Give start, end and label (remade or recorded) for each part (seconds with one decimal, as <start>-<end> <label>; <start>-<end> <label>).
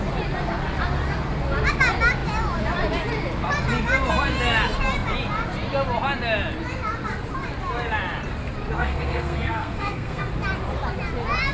0.0-8.8 recorded; 8.8-10.3 remade; 10.3-11.5 recorded